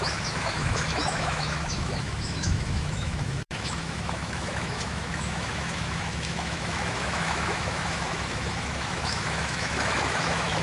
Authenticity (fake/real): fake